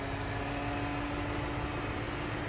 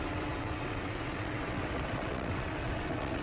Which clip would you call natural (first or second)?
first